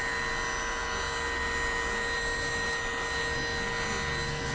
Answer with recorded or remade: recorded